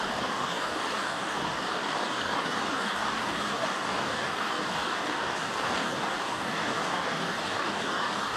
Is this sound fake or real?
fake